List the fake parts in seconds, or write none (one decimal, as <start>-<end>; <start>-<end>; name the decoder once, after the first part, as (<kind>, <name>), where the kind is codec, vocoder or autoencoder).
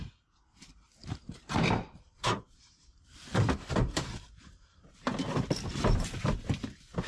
1.0-5.1 (vocoder, BigVGAN v2)